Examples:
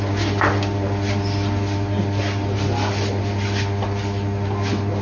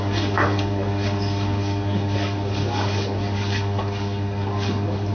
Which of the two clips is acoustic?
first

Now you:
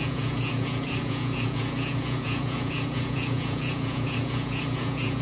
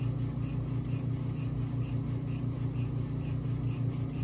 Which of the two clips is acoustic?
second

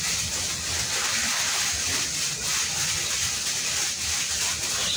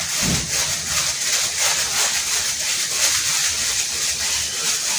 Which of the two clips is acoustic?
first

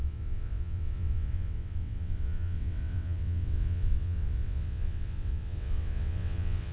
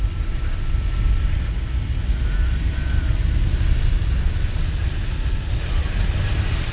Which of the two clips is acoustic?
second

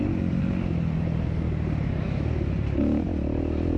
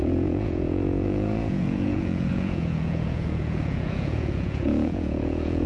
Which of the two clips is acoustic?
first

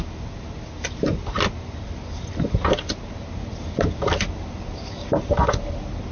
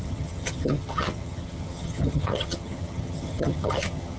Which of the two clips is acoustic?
first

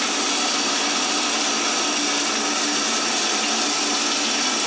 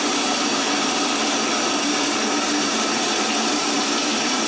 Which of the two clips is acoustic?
first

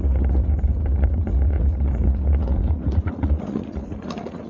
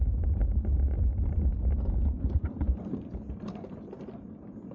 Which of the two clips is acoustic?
second